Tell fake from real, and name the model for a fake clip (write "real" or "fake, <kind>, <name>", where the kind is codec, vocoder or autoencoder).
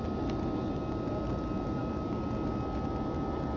real